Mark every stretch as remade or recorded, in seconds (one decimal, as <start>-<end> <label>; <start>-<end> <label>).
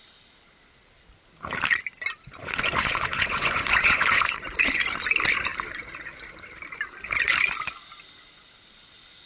0.0-2.4 recorded; 2.4-4.8 remade; 4.8-9.3 recorded